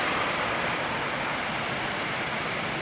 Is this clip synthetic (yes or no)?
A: no